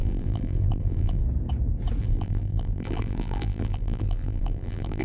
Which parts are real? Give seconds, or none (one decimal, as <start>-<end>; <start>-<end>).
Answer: 1.2-2.0